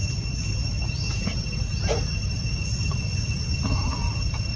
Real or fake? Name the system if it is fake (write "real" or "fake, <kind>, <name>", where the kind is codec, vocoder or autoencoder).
real